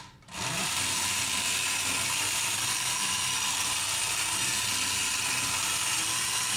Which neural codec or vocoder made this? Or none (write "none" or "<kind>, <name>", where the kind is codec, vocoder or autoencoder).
none